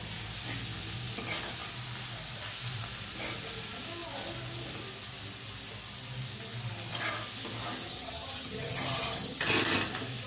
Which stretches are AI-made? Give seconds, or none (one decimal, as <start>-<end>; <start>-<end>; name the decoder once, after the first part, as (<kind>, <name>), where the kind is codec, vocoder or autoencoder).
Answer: 7.9-9.5 (vocoder, HiFi-GAN)